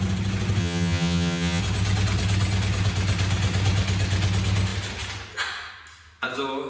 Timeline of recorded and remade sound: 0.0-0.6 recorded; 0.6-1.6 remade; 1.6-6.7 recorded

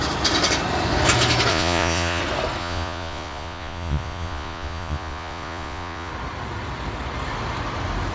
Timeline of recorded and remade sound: 0.0-1.5 recorded; 1.5-2.2 remade; 2.2-2.6 recorded; 2.6-6.1 remade; 6.1-8.1 recorded

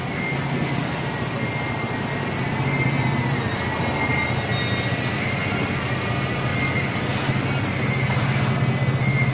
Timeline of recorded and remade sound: 0.0-9.3 recorded

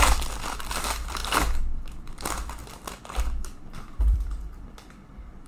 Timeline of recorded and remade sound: 0.0-1.2 remade; 1.2-2.1 recorded; 2.1-2.6 remade; 2.6-4.0 recorded; 4.0-5.5 remade

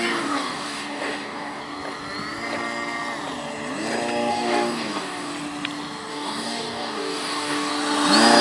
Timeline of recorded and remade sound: 0.0-1.6 remade; 1.6-4.3 recorded; 4.3-5.3 remade; 5.3-6.1 recorded; 6.1-7.7 remade; 7.7-8.4 recorded

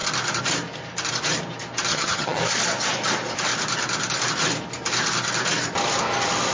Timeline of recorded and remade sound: 0.0-1.9 recorded; 1.9-2.4 remade; 2.4-6.5 recorded

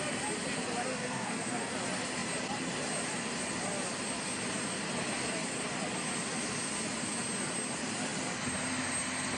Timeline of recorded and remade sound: 0.0-0.9 recorded; 0.9-1.7 remade; 1.7-9.4 recorded

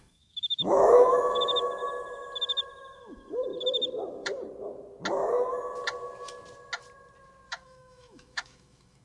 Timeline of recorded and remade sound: 0.0-1.8 remade; 1.8-3.0 recorded; 3.0-3.5 remade; 3.5-7.5 recorded; 7.5-9.0 remade